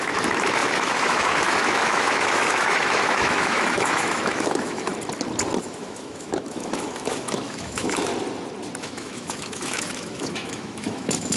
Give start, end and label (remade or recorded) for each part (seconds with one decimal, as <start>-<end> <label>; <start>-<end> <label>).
0.0-4.9 remade; 4.9-5.6 recorded; 5.6-8.1 remade; 8.1-8.8 recorded; 8.8-11.4 remade